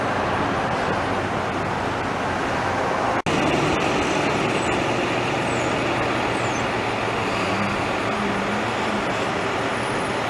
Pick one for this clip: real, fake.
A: real